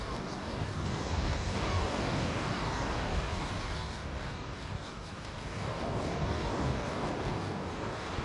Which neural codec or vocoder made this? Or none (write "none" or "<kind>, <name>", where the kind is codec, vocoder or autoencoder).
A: codec, DAC